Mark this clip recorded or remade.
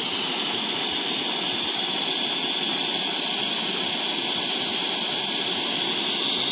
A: recorded